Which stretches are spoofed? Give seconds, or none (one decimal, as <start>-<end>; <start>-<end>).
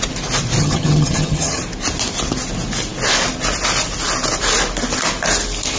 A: 0.6-1.6